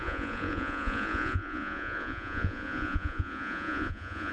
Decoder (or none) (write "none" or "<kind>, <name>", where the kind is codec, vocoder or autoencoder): vocoder, Vocos